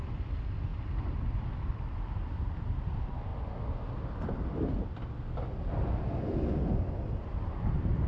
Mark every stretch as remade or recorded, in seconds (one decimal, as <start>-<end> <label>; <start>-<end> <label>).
0.0-0.7 recorded; 0.7-1.7 remade; 1.7-8.1 recorded